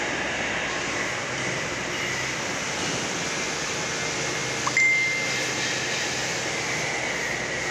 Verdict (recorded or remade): recorded